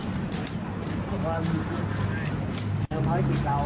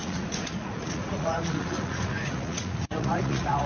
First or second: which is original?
first